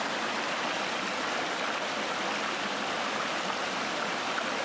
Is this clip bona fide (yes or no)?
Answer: yes